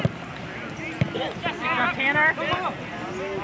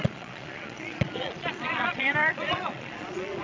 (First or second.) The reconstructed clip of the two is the second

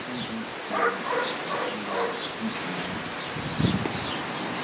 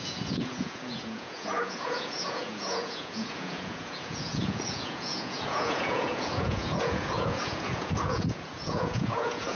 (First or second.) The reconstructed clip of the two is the second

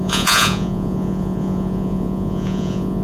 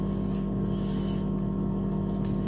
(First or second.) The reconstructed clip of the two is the first